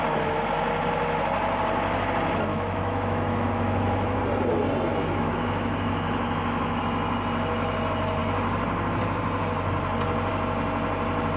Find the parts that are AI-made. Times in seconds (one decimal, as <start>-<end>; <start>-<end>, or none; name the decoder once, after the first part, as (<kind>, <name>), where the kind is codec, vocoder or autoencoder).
2.5-4.2 (autoencoder, DAC-VAE); 4.9-6.8